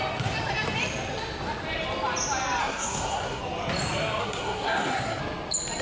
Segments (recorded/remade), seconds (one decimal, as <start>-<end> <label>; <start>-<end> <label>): 0.0-2.6 recorded; 2.6-3.4 remade; 3.4-4.2 recorded; 4.2-5.2 remade; 5.2-5.8 recorded